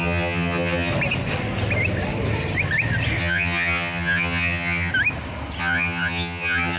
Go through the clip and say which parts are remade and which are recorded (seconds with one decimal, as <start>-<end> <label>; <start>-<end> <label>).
0.0-0.9 remade; 0.9-3.2 recorded; 3.2-4.9 remade; 4.9-5.6 recorded; 5.6-6.8 remade